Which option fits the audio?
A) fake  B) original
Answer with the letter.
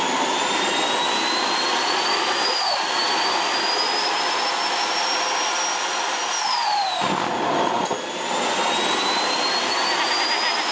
B